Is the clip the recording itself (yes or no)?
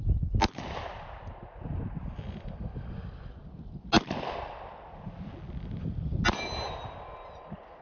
yes